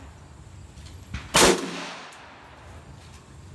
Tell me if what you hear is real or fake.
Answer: real